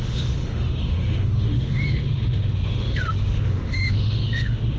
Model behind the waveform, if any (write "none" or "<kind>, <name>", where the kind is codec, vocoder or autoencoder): autoencoder, DAC-VAE